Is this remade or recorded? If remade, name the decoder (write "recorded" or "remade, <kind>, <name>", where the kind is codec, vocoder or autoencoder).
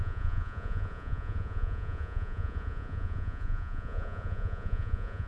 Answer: remade, vocoder, Vocos